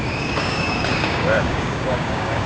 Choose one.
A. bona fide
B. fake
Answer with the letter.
B